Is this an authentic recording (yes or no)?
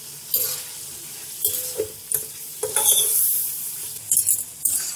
yes